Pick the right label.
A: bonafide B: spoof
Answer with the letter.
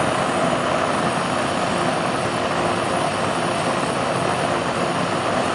A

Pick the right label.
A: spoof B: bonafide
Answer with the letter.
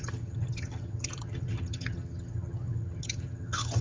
A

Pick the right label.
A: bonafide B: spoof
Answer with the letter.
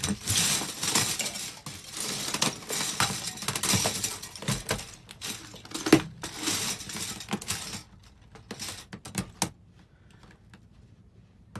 A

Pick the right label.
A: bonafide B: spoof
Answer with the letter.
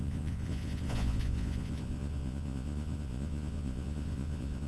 B